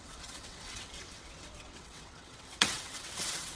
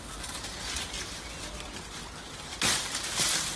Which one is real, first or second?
second